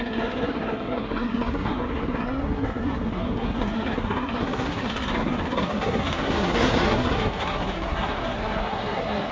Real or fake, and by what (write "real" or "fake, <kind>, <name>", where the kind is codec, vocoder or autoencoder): fake, codec, SNAC